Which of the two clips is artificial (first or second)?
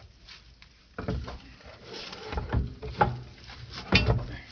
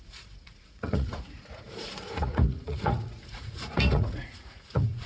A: second